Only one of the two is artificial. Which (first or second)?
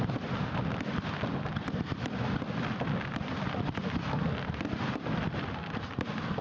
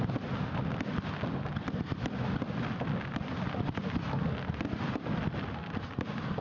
first